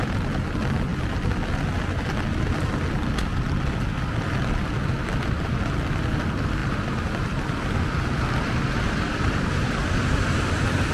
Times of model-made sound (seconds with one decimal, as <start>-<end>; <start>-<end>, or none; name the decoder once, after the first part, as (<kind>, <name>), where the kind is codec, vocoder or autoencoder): none